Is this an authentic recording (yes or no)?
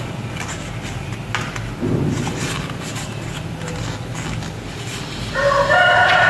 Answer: yes